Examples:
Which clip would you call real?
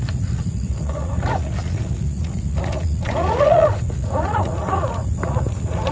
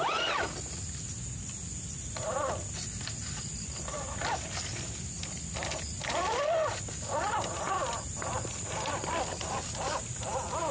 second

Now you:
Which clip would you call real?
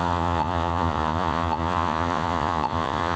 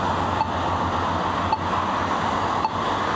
second